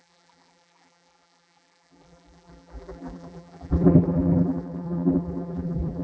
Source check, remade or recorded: remade